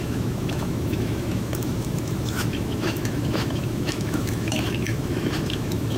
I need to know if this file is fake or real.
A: fake